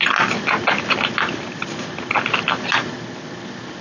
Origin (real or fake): real